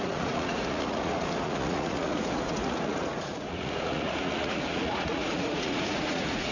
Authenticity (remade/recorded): remade